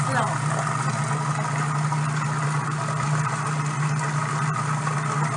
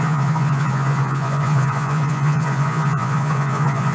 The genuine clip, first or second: first